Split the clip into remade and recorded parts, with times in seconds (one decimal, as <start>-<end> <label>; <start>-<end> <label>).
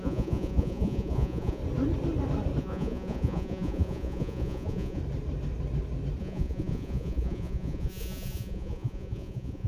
0.0-1.6 remade; 1.6-2.6 recorded; 2.6-5.0 remade; 5.0-6.2 recorded; 6.2-9.7 remade